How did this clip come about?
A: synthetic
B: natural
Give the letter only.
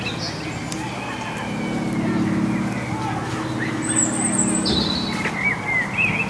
B